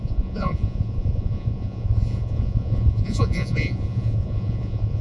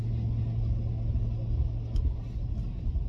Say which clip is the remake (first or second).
first